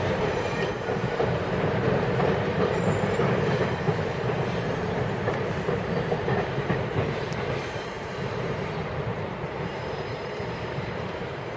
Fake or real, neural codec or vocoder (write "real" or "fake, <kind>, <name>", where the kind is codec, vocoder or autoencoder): fake, vocoder, BigVGAN v2